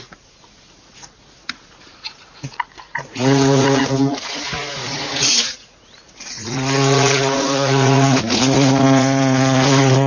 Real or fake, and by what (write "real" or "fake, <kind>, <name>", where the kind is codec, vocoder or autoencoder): fake, vocoder, Vocos